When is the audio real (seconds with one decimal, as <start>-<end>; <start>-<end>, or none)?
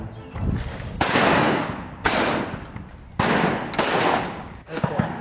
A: 0.0-0.7; 2.3-4.1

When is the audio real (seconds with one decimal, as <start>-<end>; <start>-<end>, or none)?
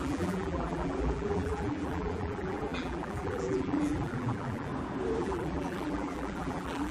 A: 4.7-5.2